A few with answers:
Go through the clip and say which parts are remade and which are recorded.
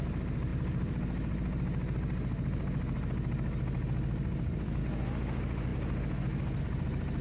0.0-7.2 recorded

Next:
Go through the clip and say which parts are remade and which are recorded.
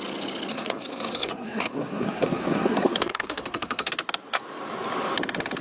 0.0-0.5 recorded; 0.5-3.9 remade; 3.9-5.6 recorded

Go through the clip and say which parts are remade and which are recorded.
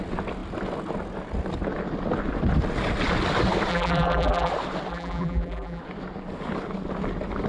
0.0-3.7 recorded; 3.7-4.5 remade; 4.5-4.9 recorded; 4.9-5.8 remade; 5.8-7.5 recorded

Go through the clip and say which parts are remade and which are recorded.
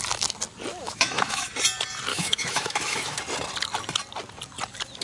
0.0-0.7 recorded; 0.7-1.5 remade; 1.5-2.1 recorded; 2.1-3.2 remade; 3.2-5.0 recorded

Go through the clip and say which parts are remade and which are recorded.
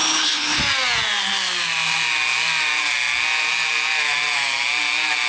0.0-0.6 remade; 0.6-5.3 recorded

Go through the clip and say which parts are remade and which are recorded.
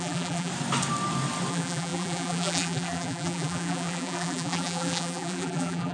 0.0-0.5 remade; 0.5-1.5 recorded; 1.5-5.9 remade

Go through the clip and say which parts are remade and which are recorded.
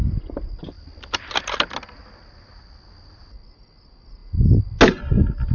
0.0-5.5 recorded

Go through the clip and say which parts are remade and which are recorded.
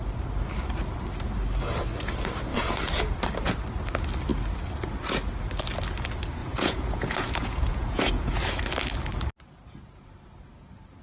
0.0-6.4 recorded; 6.4-8.4 remade; 8.4-11.0 recorded